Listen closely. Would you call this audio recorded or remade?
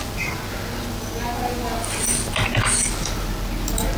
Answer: recorded